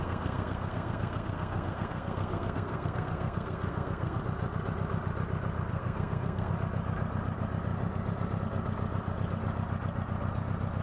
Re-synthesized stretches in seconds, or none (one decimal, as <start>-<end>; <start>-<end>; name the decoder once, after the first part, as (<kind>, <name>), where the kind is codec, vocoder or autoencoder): 0.0-4.2 (codec, SNAC); 5.7-6.5